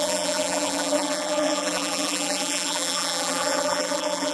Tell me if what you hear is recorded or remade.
remade